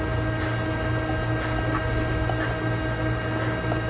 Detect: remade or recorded recorded